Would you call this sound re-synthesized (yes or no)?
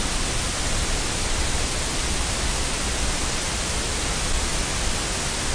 no